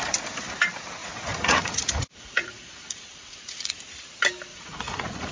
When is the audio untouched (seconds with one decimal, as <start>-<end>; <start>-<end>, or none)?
0.0-1.0; 3.7-4.5

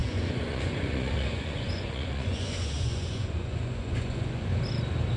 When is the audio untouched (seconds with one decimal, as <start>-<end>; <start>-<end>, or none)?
4.5-5.2

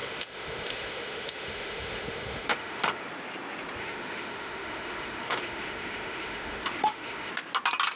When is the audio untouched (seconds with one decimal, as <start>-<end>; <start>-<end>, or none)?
3.0-3.8; 7.3-8.0

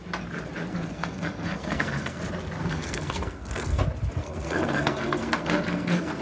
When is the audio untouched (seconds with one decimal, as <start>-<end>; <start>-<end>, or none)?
0.0-0.7; 2.2-2.6; 3.8-4.2

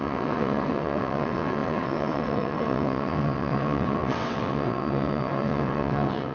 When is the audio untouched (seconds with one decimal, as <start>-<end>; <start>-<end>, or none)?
none

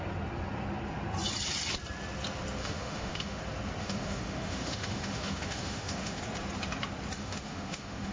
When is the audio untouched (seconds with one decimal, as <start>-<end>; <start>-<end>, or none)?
0.0-2.6; 3.4-3.8; 6.2-7.2

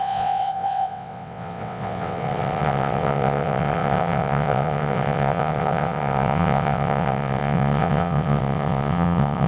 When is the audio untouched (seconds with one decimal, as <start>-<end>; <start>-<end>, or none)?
none